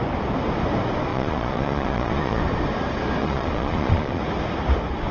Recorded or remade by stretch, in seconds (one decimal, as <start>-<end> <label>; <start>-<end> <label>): 0.0-1.1 recorded; 1.1-2.4 remade; 2.4-3.2 recorded; 3.2-4.2 remade; 4.2-5.1 recorded